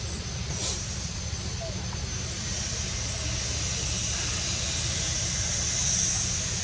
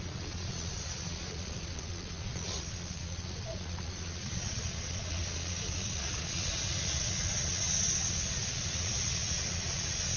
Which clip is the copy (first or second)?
second